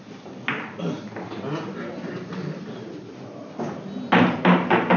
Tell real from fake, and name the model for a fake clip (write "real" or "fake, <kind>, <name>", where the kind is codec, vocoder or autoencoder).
real